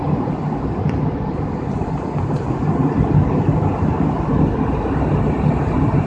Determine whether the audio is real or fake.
real